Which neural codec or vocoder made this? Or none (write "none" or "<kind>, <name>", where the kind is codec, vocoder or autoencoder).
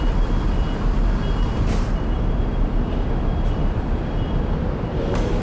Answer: vocoder, BigVGAN v2